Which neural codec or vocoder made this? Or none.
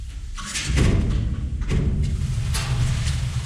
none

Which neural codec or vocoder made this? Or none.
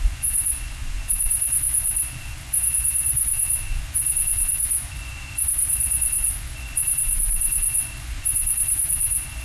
vocoder, Vocos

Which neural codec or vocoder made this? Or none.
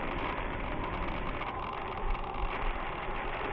none